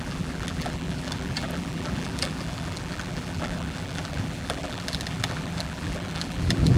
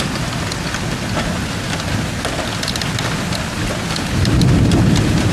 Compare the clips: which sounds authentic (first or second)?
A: second